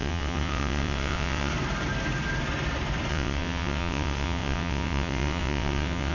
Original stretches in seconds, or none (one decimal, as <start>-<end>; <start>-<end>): 1.5-3.1